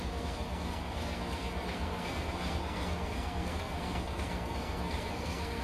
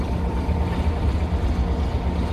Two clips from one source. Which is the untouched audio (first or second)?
second